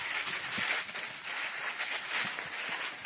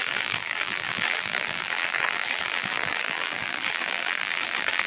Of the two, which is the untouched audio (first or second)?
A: first